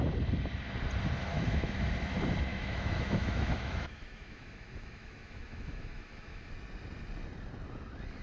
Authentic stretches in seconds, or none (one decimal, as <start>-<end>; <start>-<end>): 0.0-1.3; 1.9-2.5; 6.5-8.2